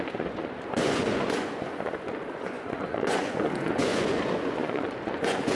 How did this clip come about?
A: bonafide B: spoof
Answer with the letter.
B